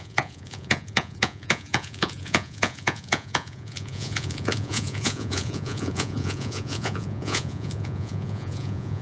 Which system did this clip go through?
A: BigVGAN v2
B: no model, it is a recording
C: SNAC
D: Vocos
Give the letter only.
D